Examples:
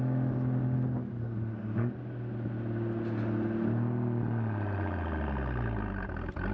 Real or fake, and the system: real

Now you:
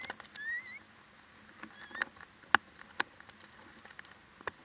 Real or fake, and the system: real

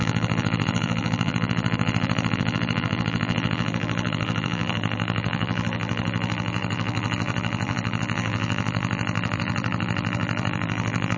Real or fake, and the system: fake, vocoder, BigVGAN v2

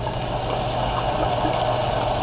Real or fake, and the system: real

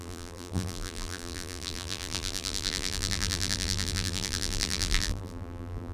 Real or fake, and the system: fake, vocoder, BigVGAN v2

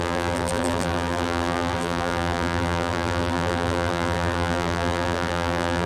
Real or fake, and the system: fake, vocoder, BigVGAN v2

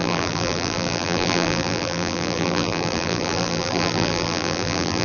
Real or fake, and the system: fake, vocoder, BigVGAN v2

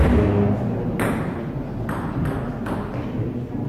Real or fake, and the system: real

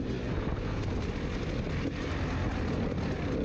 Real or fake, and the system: real